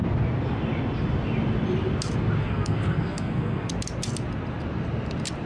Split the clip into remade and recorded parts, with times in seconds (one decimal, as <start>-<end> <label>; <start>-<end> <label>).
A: 0.0-2.4 recorded; 2.4-3.7 remade; 3.7-5.5 recorded